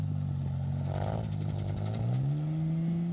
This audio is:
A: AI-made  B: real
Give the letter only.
B